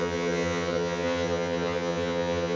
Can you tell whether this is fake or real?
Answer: fake